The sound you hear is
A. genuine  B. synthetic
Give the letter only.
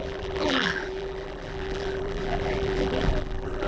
B